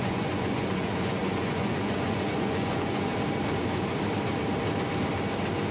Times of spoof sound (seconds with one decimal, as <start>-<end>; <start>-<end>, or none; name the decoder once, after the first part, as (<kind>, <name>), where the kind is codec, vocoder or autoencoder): 0.0-3.1 (vocoder, Vocos)